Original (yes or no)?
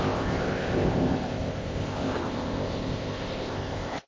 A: no